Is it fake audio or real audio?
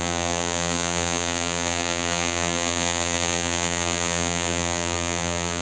fake